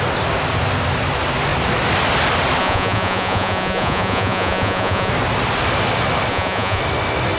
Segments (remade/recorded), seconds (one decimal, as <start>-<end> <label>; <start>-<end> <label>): 0.0-2.6 recorded; 2.6-5.1 remade; 5.1-6.3 recorded; 6.3-6.8 remade; 6.8-7.4 recorded